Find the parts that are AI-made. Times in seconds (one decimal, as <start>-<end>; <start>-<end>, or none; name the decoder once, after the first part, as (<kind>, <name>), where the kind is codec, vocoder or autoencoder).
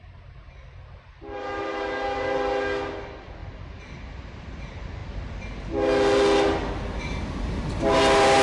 none